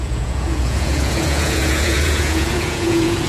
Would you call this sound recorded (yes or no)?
no